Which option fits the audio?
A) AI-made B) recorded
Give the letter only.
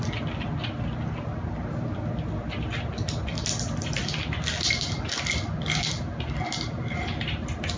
B